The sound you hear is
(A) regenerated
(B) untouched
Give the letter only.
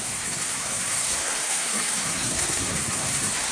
A